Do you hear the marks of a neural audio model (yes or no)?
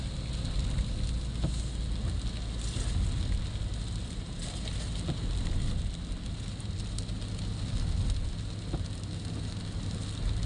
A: no